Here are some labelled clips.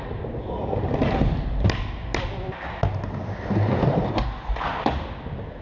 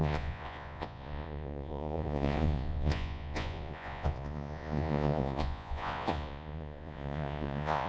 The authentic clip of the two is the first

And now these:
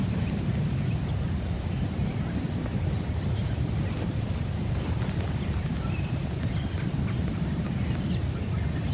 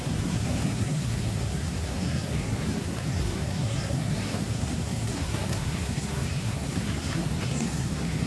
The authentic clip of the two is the first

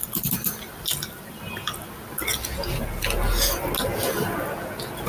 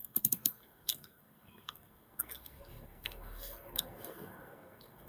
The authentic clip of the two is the first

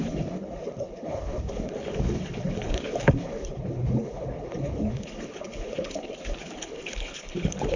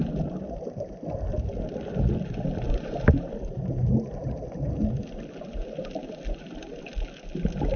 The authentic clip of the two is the second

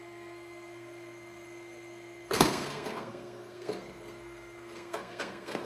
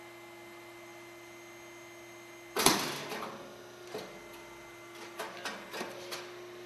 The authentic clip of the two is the second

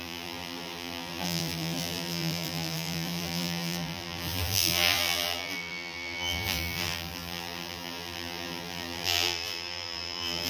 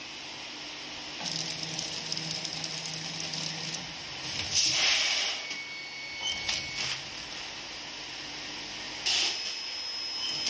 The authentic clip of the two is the second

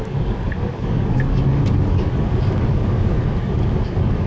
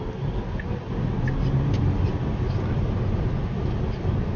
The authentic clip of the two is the second